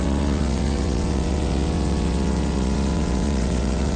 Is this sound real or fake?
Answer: fake